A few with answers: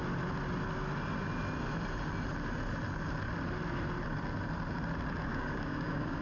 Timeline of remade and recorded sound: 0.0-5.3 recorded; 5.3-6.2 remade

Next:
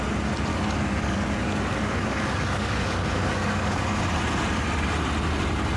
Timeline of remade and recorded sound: 0.0-0.5 recorded; 0.5-4.0 remade; 4.0-5.8 recorded

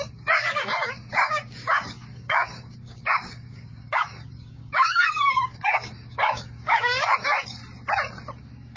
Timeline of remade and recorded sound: 0.0-7.6 remade; 7.6-8.4 recorded; 8.4-8.8 remade

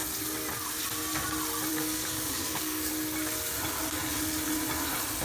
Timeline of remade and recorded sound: 0.0-1.7 recorded; 1.7-2.9 remade; 2.9-5.2 recorded

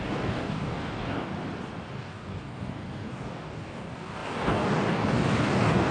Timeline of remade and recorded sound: 0.0-1.3 remade; 1.3-1.9 recorded; 1.9-5.9 remade

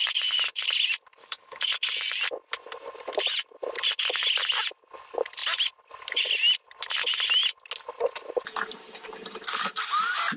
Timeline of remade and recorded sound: 0.0-1.2 recorded; 1.2-1.7 remade; 1.7-10.4 recorded

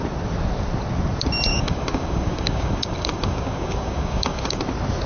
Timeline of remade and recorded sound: 0.0-1.5 recorded; 1.5-4.6 remade; 4.6-5.1 recorded

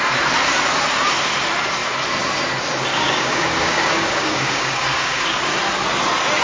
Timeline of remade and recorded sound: 0.0-2.9 recorded; 2.9-5.5 remade; 5.5-6.4 recorded